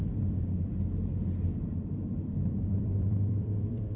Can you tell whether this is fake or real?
fake